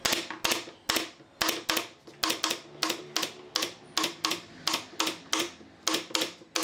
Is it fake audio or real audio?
real